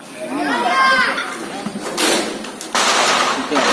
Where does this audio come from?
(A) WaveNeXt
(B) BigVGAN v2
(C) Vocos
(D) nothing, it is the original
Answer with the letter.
D